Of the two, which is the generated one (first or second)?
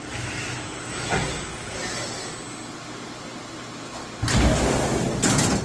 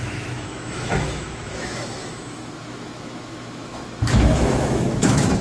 second